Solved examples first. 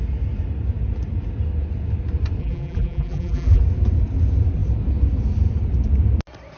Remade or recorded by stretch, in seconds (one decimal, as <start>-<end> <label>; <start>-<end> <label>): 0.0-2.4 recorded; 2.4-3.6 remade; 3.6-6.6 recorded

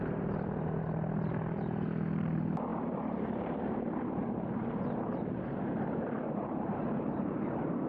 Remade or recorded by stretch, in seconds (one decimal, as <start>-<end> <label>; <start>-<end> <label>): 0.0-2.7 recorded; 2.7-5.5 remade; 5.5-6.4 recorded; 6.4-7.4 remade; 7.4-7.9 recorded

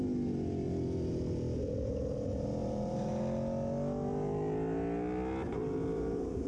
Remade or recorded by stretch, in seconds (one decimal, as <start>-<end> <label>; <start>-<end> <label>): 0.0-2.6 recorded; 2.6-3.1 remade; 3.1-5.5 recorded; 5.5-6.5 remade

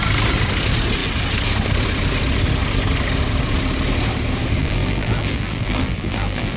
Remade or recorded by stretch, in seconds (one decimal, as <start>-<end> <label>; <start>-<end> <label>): 0.0-4.6 recorded; 4.6-6.6 remade

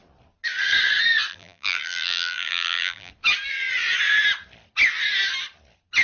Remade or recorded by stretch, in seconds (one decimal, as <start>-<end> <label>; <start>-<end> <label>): 0.0-1.3 recorded; 1.3-3.1 remade; 3.1-6.0 recorded